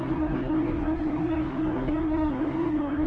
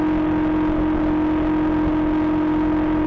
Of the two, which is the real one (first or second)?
second